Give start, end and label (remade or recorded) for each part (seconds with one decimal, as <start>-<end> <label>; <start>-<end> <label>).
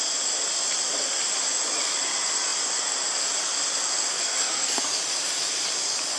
0.0-4.1 recorded; 4.1-4.8 remade; 4.8-6.2 recorded